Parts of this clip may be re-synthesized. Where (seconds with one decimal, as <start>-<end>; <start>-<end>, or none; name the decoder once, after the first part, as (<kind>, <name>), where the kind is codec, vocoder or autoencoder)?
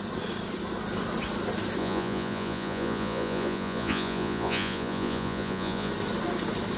1.8-5.9 (vocoder, Vocos)